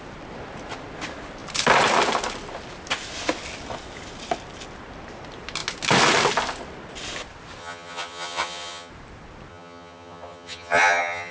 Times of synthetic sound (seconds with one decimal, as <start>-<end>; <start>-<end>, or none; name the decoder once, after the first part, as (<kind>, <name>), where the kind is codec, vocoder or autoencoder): 7.6-8.9 (vocoder, HiFi-GAN); 9.5-11.3